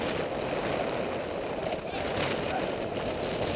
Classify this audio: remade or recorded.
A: recorded